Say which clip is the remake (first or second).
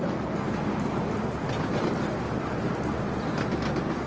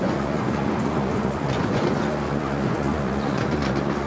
second